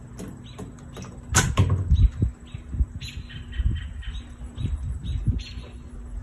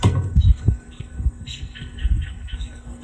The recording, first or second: first